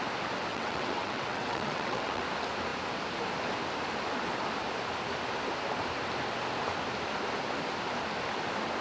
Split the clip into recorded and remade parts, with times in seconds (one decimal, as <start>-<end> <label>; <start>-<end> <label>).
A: 0.0-0.5 recorded; 0.5-2.2 remade; 2.2-8.8 recorded